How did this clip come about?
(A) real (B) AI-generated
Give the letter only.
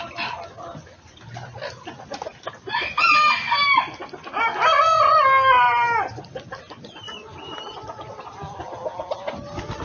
A